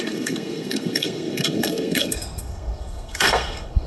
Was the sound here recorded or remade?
remade